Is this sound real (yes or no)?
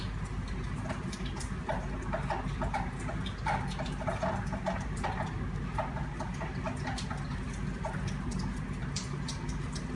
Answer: yes